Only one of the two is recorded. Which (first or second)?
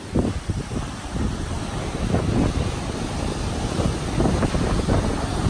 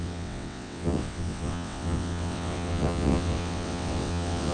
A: first